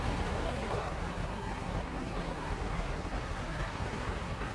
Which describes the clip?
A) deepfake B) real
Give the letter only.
A